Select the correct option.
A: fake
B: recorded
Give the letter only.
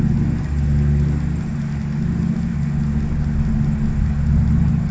B